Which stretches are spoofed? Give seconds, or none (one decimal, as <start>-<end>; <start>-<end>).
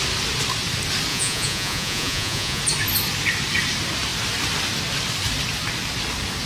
1.1-2.6